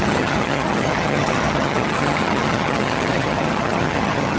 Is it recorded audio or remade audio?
remade